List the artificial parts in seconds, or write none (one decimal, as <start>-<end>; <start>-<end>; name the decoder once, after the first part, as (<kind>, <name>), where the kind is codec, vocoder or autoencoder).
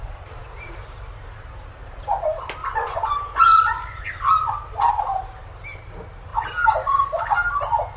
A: 2.6-4.0 (vocoder, Vocos)